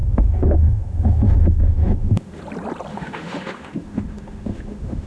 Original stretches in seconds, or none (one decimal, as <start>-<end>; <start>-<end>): 2.4-2.9

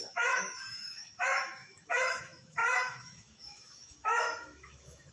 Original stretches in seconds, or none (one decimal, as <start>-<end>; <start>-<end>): none

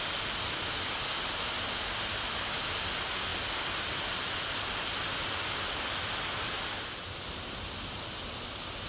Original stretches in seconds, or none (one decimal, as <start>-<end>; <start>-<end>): 0.0-8.9

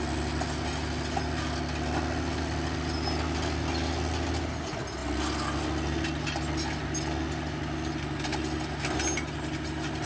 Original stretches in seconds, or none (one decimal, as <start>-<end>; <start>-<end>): 0.0-10.1

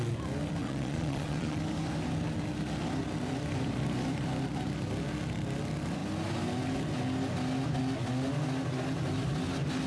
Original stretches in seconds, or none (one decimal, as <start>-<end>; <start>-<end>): 0.0-0.6; 1.6-9.9